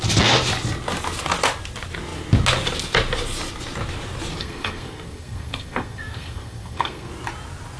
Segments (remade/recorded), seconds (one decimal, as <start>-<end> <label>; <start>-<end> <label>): 0.0-4.4 recorded; 4.4-7.1 remade; 7.1-7.8 recorded